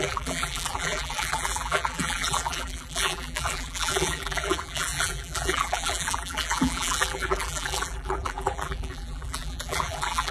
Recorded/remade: remade